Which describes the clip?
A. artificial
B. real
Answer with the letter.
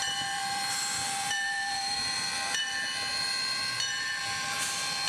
A